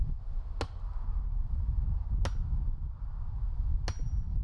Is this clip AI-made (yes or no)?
no